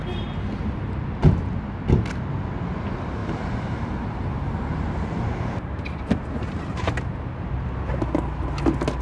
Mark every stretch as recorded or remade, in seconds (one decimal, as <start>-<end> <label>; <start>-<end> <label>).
0.0-3.2 recorded; 3.2-7.1 remade; 7.1-9.0 recorded